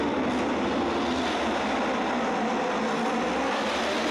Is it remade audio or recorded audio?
recorded